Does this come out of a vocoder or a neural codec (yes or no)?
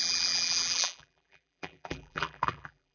yes